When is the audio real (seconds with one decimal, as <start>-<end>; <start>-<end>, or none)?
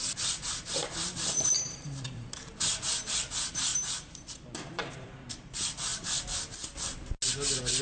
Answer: 0.0-0.8; 2.6-3.7; 5.3-7.8